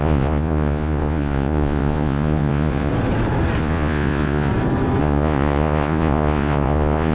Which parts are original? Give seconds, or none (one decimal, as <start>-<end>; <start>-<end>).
2.9-3.6; 4.5-5.0